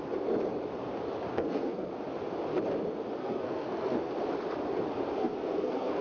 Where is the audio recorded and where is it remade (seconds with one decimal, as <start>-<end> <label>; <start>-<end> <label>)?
0.0-1.3 recorded; 1.3-1.9 remade; 1.9-3.2 recorded; 3.2-4.1 remade; 4.1-5.2 recorded; 5.2-6.0 remade